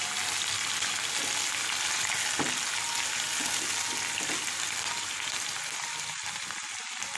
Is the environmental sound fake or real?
real